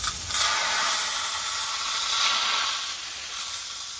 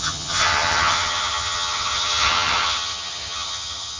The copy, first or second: second